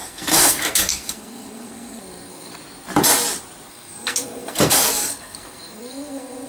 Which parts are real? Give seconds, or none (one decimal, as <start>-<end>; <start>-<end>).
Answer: 2.5-3.7